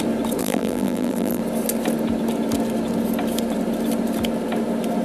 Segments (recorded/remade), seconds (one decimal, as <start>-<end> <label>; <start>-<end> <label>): 0.0-0.4 recorded; 0.4-1.4 remade; 1.4-5.0 recorded